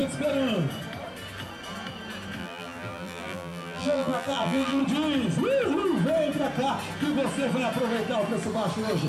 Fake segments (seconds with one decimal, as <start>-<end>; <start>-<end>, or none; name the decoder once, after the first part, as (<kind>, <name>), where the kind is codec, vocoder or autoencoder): 2.4-4.8 (vocoder, BigVGAN v2)